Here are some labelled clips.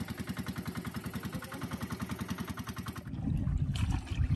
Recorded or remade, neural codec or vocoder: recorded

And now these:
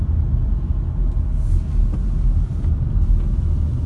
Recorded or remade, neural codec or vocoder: recorded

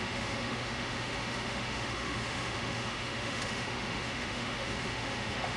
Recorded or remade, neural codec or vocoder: remade, autoencoder, DAC-VAE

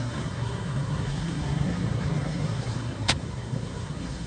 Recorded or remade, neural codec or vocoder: remade, codec, SNAC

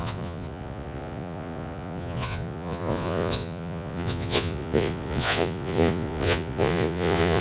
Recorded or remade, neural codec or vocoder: remade, vocoder, Vocos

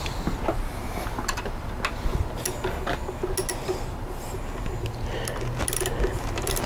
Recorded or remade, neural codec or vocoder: recorded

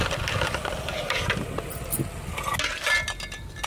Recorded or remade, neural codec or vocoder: recorded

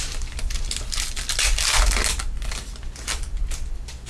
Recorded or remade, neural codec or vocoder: recorded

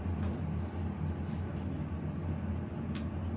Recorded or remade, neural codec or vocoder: recorded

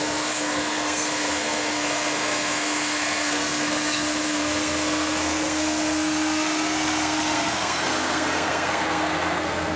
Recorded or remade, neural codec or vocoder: remade, codec, SNAC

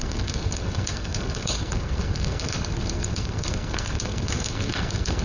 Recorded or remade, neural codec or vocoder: remade, codec, SNAC